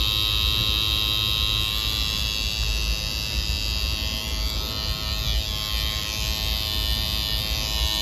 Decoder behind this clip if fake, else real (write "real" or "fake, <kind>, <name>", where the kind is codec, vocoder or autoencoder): real